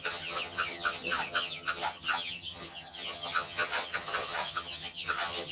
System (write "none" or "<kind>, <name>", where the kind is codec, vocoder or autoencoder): vocoder, HiFi-GAN